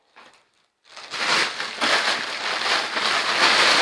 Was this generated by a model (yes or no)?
no